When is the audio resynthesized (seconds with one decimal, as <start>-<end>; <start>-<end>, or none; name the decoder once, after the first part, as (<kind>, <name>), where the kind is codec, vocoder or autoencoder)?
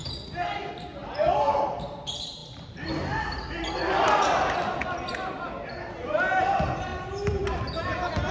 2.4-3.7 (vocoder, BigVGAN v2); 4.8-5.3; 6.9-7.6